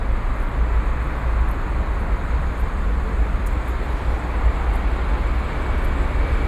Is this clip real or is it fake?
real